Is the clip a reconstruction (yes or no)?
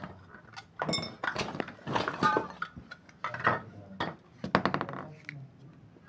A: no